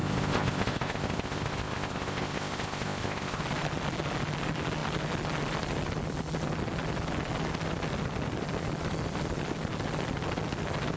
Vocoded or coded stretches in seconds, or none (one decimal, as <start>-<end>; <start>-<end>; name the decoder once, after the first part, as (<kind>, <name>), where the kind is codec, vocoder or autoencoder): 0.0-3.4 (codec, ZipCodec)